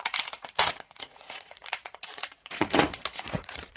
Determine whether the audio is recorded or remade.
remade